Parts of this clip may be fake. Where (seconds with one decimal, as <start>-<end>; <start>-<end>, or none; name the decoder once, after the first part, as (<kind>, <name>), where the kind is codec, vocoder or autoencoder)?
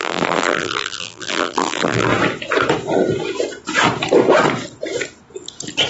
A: 0.0-2.1 (vocoder, BigVGAN v2)